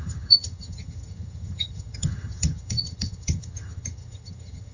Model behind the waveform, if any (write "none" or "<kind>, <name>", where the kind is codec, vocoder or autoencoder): vocoder, HiFi-GAN